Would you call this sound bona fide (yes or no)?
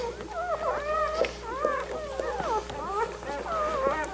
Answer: yes